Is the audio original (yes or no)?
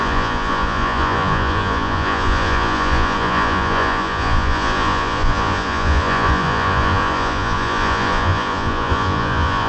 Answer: no